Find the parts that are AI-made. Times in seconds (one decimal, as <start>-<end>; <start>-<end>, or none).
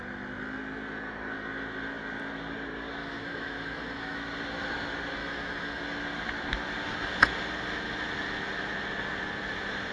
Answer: 3.0-4.2; 5.2-5.8